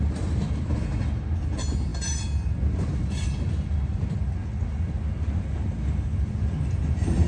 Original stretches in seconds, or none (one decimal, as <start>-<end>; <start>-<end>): 0.0-7.3